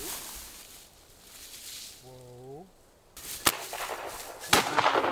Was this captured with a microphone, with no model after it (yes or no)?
yes